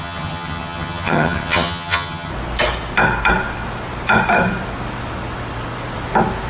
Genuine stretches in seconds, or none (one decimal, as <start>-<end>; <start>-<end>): 2.3-6.5